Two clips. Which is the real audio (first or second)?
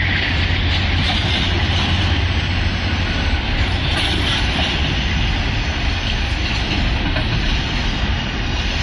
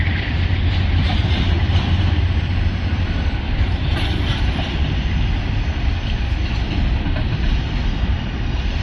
first